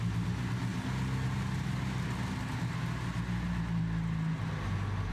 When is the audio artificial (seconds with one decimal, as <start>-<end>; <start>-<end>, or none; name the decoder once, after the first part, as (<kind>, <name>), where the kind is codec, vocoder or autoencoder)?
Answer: none